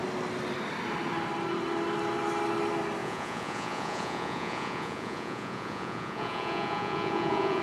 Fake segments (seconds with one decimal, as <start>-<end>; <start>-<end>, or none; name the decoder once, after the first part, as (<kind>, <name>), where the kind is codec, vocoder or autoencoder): 3.0-7.6 (vocoder, Vocos)